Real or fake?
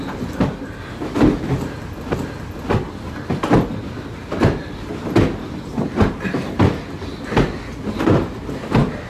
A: real